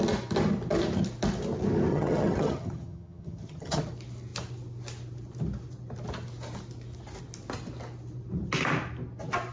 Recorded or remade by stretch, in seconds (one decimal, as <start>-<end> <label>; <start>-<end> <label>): 0.0-1.9 recorded; 1.9-3.8 remade; 3.8-9.5 recorded